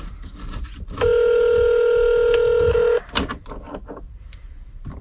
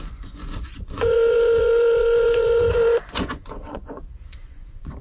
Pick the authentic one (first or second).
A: first